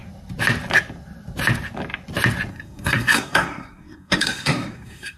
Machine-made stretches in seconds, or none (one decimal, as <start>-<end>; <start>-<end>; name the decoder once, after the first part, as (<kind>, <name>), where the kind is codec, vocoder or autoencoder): 2.5-5.2 (codec, SNAC)